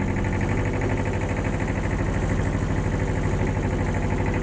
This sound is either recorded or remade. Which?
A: recorded